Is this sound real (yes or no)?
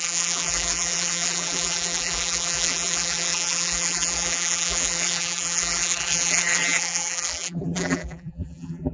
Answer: no